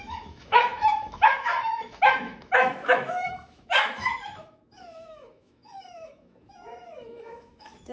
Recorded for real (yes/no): no